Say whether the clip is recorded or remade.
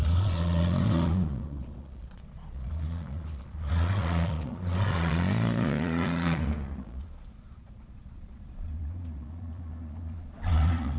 remade